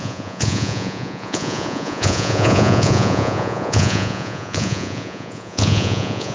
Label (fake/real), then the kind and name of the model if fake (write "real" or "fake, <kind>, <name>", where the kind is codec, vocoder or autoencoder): fake, vocoder, Vocos